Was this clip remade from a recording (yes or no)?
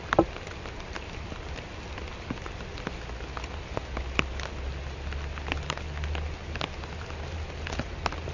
no